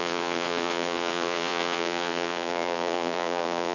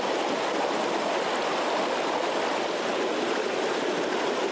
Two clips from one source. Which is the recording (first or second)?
second